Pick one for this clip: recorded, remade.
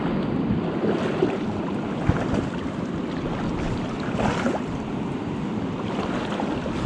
recorded